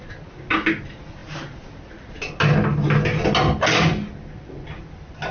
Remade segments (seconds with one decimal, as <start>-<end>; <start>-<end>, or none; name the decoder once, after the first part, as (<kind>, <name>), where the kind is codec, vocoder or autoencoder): none